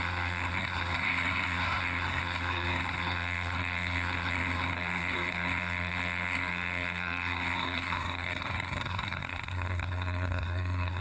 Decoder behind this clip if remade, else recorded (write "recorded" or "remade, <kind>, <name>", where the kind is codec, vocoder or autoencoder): remade, codec, SNAC